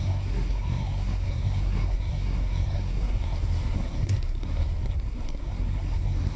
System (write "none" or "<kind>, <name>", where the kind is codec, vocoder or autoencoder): codec, SNAC